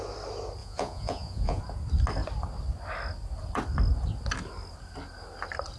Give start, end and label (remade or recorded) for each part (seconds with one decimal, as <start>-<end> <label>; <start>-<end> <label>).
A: 0.0-0.6 recorded; 0.6-1.6 remade; 1.6-5.8 recorded